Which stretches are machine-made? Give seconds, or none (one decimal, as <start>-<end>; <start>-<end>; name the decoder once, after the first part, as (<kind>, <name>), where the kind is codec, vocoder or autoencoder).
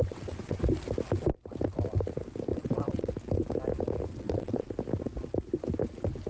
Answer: 0.0-0.6 (vocoder, WaveNeXt); 2.5-3.1; 4.1-4.7